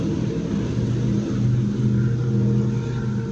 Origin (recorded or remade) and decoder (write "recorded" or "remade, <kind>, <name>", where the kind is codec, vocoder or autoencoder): recorded